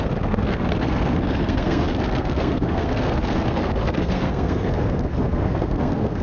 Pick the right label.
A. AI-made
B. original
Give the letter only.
A